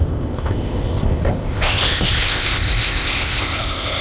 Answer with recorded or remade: remade